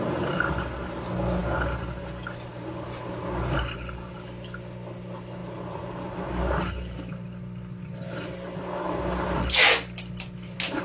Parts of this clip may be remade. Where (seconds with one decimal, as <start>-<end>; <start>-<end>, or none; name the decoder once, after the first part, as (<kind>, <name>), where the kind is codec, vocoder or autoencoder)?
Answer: none